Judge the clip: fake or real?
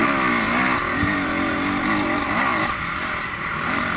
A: real